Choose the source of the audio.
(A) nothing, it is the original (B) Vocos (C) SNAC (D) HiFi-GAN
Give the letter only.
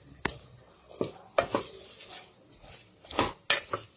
A